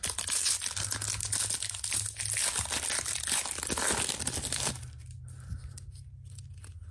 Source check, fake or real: real